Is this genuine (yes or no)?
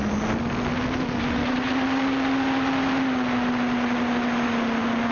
yes